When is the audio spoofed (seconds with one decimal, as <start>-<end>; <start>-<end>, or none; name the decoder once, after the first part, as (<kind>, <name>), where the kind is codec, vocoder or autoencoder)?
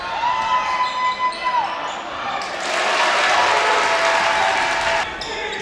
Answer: none